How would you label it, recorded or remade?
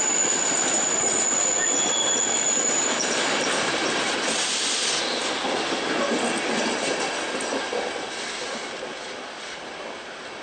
recorded